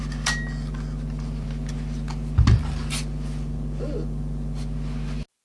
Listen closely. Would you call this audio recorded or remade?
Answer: recorded